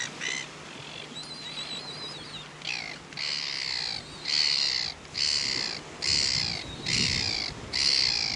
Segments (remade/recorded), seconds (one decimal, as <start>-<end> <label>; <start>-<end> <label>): 0.0-8.4 recorded